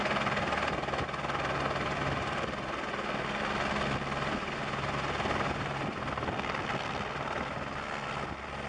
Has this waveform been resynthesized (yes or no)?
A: no